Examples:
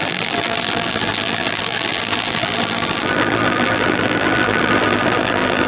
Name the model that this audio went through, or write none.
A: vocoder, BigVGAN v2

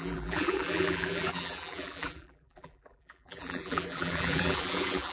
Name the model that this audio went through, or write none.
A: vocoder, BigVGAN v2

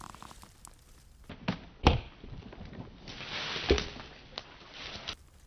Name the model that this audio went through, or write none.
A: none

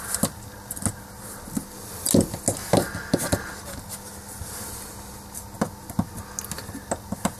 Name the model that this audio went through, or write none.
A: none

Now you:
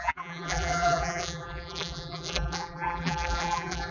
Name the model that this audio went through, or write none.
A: vocoder, BigVGAN v2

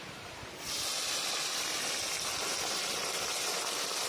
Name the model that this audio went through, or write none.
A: none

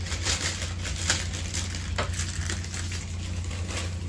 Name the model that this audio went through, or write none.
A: none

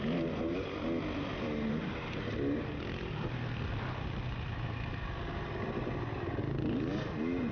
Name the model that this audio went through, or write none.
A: none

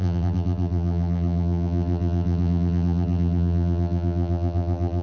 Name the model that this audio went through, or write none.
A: vocoder, BigVGAN v2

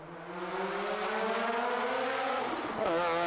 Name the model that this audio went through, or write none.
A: none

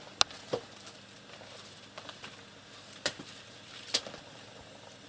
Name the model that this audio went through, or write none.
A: none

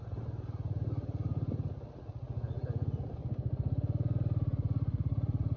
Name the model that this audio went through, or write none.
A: none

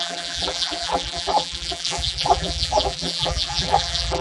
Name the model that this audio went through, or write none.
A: vocoder, BigVGAN v2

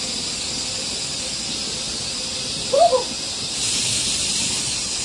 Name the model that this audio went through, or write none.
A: none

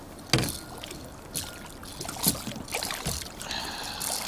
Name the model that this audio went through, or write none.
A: none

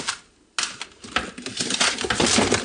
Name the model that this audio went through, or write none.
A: none